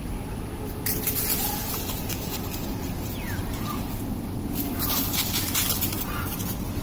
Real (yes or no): yes